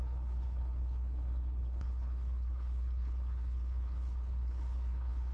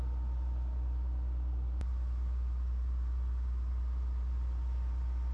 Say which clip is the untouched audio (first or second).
second